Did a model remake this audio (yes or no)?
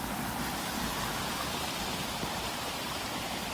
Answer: yes